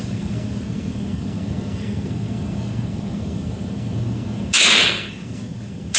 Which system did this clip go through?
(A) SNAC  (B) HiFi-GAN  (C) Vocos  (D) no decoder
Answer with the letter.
A